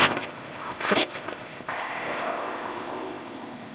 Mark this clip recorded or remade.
remade